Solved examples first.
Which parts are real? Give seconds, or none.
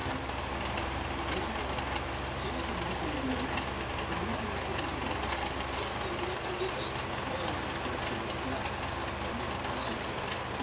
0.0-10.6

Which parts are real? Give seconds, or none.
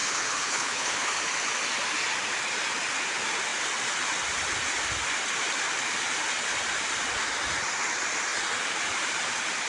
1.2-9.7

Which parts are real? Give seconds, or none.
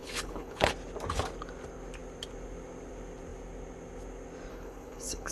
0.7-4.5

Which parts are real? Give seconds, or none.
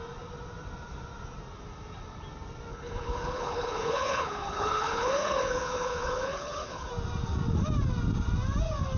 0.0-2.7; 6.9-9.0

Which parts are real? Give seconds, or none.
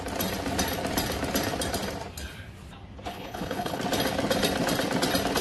0.0-3.1; 3.8-5.4